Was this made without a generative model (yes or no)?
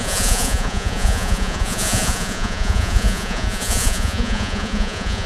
no